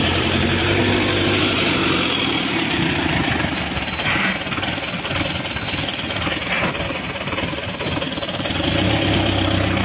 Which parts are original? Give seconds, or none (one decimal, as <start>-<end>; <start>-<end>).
0.8-1.4; 1.8-2.3; 4.3-7.0